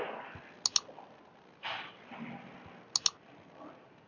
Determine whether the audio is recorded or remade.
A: recorded